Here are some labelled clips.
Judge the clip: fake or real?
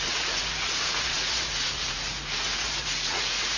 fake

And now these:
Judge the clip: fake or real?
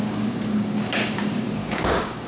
fake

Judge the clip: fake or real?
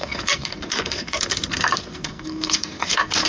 fake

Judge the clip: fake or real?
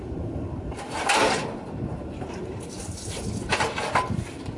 fake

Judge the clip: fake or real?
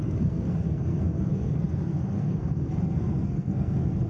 fake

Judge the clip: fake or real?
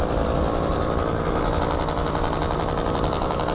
real